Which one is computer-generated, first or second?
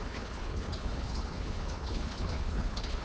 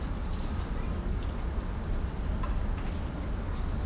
first